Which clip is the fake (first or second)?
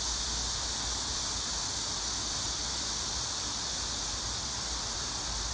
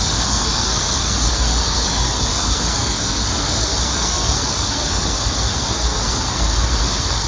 second